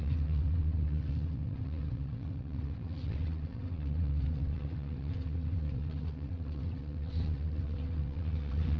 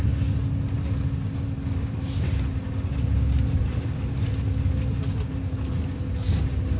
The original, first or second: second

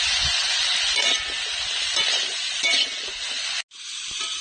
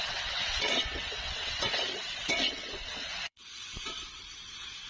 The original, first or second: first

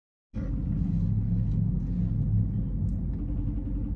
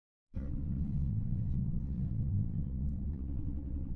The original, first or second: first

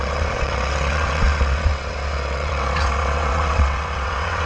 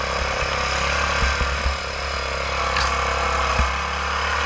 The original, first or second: second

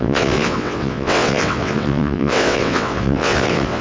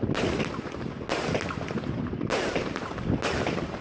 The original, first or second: second